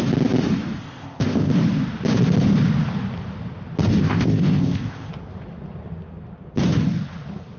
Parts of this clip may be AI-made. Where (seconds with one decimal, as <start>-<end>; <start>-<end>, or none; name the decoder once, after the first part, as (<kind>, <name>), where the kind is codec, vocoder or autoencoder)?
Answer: 0.8-1.5 (codec, ZipCodec); 4.0-5.1